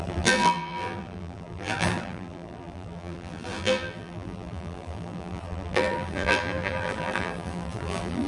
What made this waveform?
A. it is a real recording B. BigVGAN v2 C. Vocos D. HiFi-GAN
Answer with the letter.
B